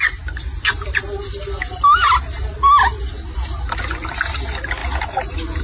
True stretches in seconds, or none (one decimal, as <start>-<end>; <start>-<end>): 0.0-5.6